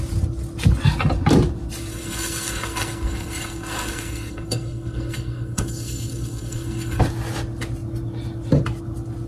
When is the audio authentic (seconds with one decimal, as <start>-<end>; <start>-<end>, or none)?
0.0-1.9; 7.0-9.3